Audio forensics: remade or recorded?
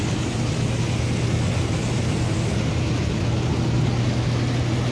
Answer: recorded